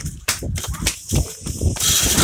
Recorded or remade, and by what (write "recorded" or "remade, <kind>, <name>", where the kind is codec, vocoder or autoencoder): recorded